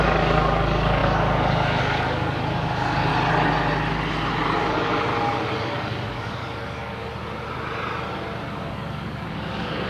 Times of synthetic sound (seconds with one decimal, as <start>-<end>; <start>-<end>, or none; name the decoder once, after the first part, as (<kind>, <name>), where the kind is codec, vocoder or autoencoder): 0.0-3.1 (codec, DAC); 4.6-5.1; 5.6-7.1; 8.5-9.9